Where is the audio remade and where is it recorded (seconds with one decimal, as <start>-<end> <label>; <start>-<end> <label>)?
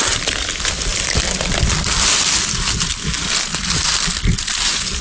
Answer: 0.0-5.0 recorded